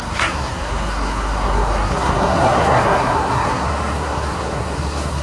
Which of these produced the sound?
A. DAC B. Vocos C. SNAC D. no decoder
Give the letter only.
C